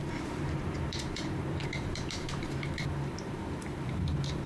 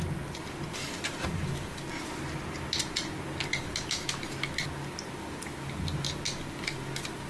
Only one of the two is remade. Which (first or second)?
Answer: first